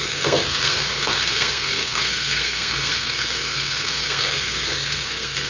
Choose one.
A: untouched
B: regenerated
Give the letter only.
B